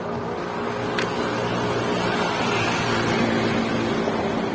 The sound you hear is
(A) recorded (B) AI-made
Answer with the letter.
A